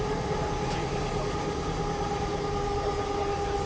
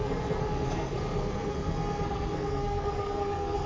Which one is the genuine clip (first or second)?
first